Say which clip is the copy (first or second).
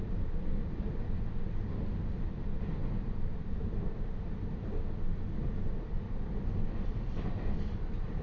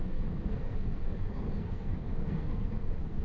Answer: second